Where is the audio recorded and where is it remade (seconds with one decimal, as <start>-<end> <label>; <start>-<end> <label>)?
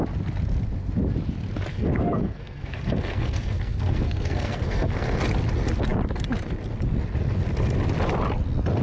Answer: 0.0-1.7 recorded; 1.7-5.2 remade; 5.2-8.8 recorded